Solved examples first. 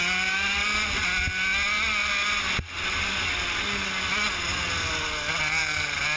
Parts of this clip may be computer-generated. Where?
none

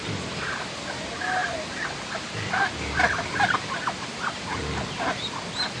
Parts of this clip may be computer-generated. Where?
none

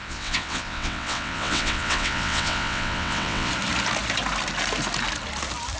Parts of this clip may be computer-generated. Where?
0.0-3.5 (vocoder, WaveNeXt)

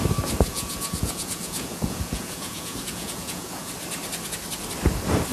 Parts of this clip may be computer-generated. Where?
0.5-3.7 (vocoder, Vocos)